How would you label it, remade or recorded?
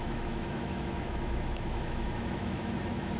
remade